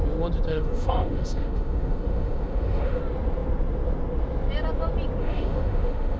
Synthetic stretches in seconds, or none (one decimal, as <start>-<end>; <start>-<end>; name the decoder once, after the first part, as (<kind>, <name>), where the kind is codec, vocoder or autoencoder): 0.5-3.0 (autoencoder, DAC-VAE); 5.2-6.2